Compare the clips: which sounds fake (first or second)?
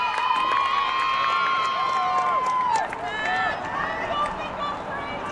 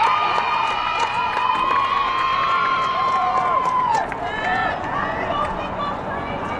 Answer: second